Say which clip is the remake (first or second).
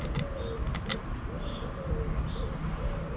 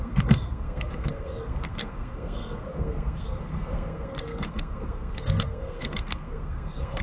second